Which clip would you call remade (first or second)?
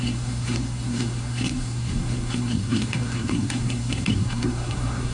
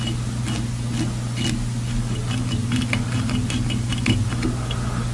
first